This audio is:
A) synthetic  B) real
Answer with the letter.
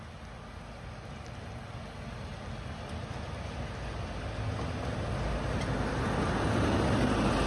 B